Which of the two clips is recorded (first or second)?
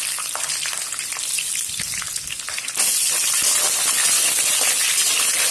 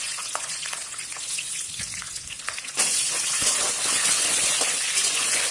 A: first